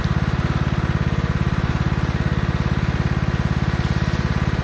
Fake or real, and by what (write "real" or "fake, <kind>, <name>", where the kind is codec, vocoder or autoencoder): real